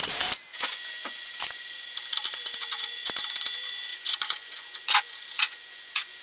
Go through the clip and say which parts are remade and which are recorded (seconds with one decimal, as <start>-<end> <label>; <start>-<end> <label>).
0.0-0.5 recorded; 0.5-1.3 remade; 1.3-2.5 recorded; 2.5-3.1 remade; 3.1-3.9 recorded; 3.9-6.2 remade